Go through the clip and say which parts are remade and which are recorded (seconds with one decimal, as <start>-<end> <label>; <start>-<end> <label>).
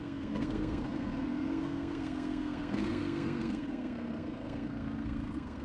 0.0-5.6 remade